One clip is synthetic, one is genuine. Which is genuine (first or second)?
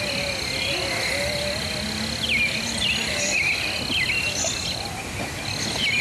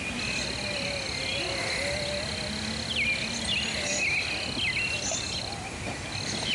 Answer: second